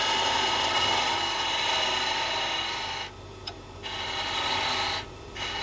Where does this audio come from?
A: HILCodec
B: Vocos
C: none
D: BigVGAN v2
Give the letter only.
C